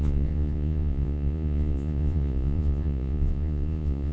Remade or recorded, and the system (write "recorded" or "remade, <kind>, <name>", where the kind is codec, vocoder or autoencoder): remade, vocoder, Vocos